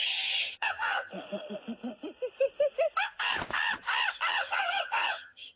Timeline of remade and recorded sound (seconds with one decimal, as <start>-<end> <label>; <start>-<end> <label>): 0.0-1.1 remade; 1.1-4.3 recorded; 4.3-5.6 remade